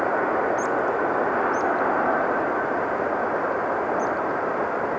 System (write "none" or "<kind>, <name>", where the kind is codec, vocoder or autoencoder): none